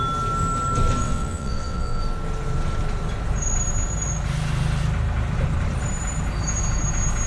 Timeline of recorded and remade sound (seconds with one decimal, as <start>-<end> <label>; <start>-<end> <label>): 0.0-1.0 recorded; 1.0-2.0 remade; 2.0-7.3 recorded